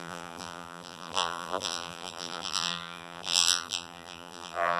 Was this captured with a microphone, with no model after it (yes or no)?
no